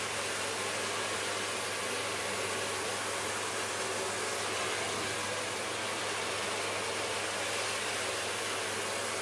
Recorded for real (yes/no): yes